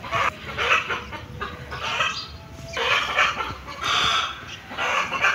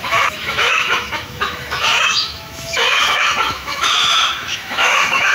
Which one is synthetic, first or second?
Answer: second